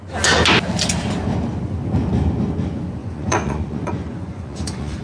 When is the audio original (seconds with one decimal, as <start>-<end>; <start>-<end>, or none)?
0.0-3.0